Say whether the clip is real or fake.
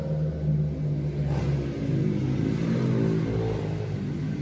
real